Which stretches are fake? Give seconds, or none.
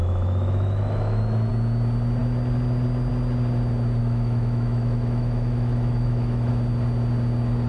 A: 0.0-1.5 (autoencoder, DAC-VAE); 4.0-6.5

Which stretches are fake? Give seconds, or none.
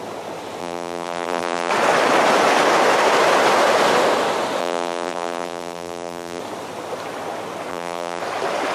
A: 0.6-1.7 (vocoder, BigVGAN v2); 4.6-6.4; 7.7-8.2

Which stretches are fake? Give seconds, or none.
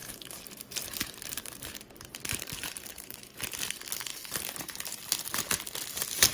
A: 0.0-3.4 (vocoder, BigVGAN v2); 4.1-5.0